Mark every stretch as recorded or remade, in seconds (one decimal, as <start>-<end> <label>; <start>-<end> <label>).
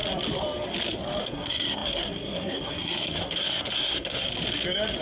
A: 0.0-1.2 recorded; 1.2-4.3 remade; 4.3-5.0 recorded